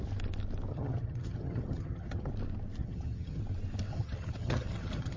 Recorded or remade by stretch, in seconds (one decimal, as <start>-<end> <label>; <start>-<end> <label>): 0.0-0.7 recorded; 0.7-2.3 remade; 2.3-2.8 recorded; 2.8-3.4 remade; 3.4-3.9 recorded; 3.9-5.2 remade